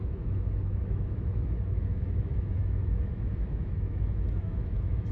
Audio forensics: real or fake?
fake